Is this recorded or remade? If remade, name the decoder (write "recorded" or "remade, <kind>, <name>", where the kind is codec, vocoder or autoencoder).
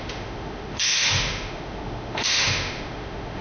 remade, autoencoder, DAC-VAE